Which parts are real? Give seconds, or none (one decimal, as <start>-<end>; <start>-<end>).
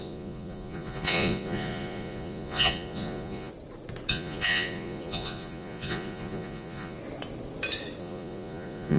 3.5-4.1; 7.0-8.0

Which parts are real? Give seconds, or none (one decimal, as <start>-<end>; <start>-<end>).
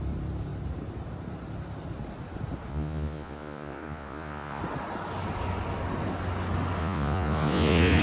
0.0-2.7; 4.6-6.8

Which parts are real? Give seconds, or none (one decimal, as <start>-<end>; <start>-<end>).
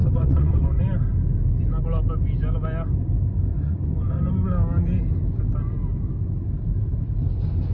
0.8-3.5; 4.3-7.7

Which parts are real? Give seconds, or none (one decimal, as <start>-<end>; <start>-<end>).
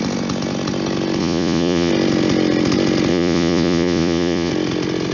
0.0-1.2; 1.9-3.1; 4.5-5.1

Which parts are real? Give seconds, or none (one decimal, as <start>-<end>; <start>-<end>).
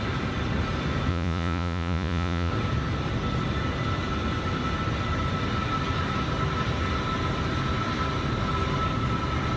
0.0-1.1; 2.5-9.6